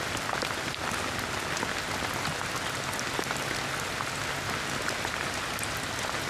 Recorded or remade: recorded